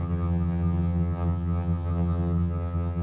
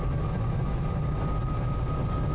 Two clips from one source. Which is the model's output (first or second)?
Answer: first